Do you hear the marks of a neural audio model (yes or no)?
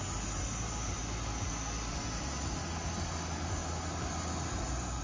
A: no